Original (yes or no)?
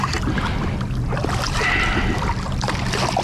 yes